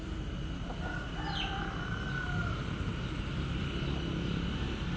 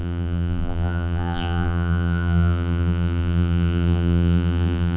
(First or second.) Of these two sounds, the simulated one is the second